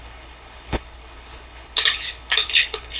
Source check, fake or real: fake